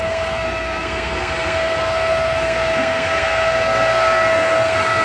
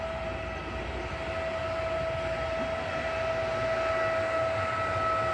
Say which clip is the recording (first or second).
second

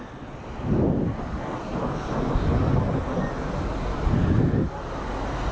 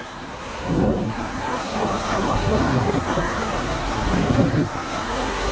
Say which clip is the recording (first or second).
first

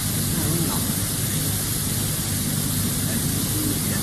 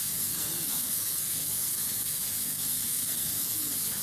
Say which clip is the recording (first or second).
first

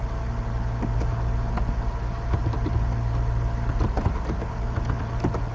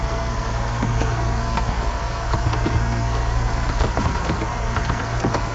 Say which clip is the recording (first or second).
first